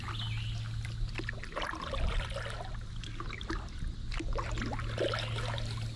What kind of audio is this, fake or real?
real